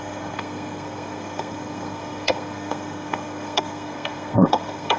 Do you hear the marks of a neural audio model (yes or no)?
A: yes